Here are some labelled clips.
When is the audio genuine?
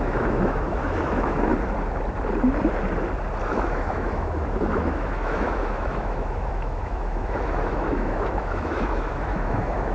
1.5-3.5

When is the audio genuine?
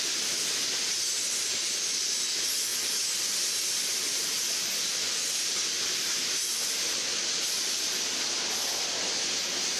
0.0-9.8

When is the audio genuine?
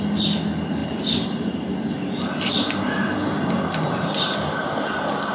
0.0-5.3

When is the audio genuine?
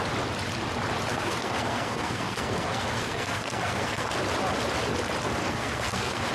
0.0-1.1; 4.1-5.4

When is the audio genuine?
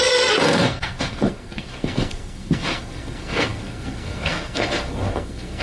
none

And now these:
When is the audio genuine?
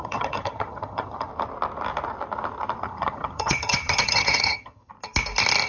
1.3-2.8; 4.9-5.7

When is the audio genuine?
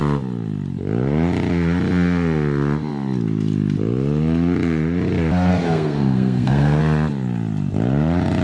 0.0-5.5; 6.8-8.4